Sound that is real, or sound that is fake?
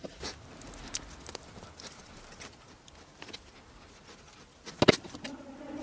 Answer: real